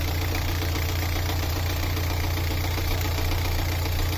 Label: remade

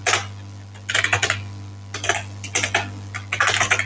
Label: recorded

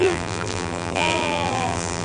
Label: remade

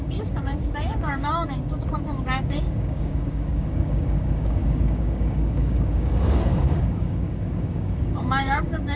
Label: remade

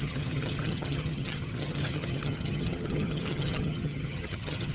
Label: remade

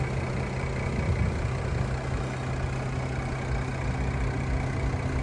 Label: recorded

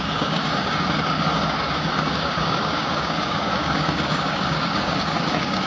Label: remade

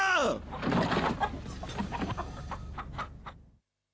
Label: recorded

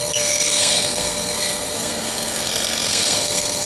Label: remade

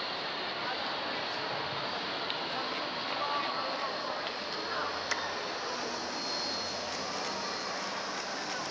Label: recorded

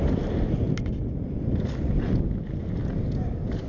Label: recorded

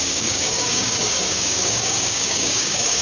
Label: remade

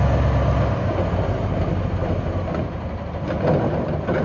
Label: recorded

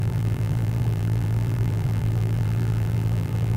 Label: remade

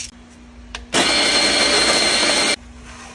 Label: recorded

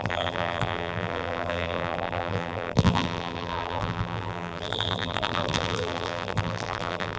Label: remade